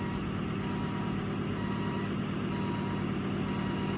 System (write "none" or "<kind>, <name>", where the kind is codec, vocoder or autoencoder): none